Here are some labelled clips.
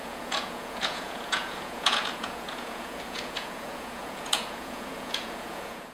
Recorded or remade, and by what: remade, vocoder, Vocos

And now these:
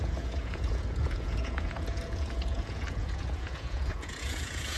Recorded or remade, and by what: remade, vocoder, Vocos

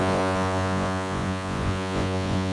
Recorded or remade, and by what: remade, vocoder, Vocos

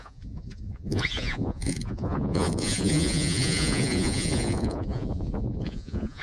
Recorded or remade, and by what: remade, vocoder, Vocos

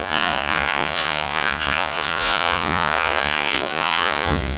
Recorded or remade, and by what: remade, vocoder, Vocos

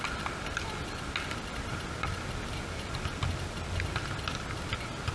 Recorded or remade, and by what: recorded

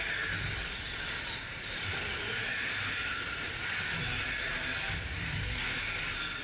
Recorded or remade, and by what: recorded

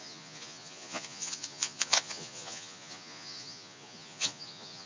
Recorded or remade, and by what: remade, vocoder, Vocos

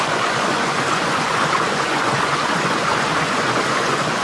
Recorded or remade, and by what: remade, vocoder, Vocos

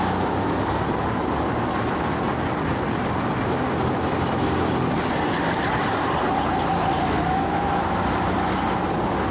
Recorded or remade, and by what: recorded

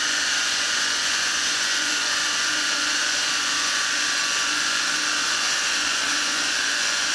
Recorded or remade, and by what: remade, vocoder, Vocos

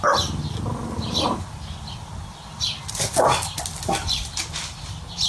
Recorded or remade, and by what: recorded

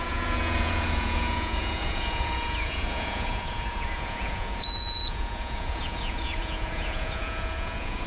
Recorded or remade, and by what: remade, vocoder, Vocos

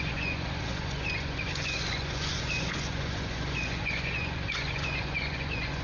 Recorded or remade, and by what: remade, vocoder, Vocos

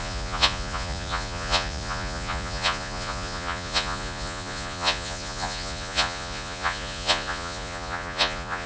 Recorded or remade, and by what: remade, vocoder, Vocos